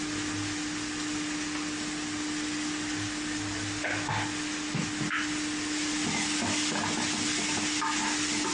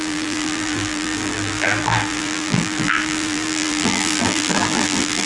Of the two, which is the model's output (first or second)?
second